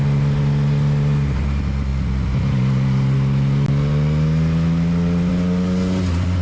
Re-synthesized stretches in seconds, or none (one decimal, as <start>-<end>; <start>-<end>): none